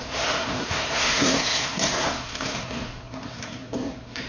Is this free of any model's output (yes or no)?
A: no